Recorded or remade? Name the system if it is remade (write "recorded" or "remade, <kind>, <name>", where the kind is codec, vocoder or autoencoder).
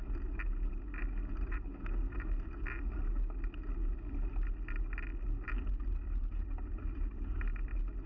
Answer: recorded